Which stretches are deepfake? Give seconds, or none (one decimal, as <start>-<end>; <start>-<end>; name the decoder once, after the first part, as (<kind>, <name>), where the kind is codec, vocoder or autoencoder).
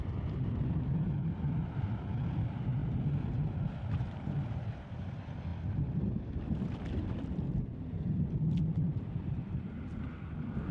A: none